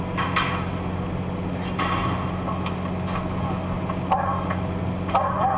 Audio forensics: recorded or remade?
recorded